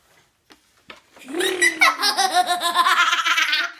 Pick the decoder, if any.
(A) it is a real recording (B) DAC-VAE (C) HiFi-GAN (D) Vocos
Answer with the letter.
A